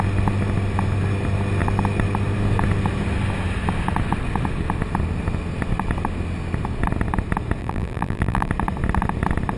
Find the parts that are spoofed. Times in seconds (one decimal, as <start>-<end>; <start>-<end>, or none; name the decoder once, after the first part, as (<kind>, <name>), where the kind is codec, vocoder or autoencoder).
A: 7.6-8.5 (vocoder, BigVGAN v2)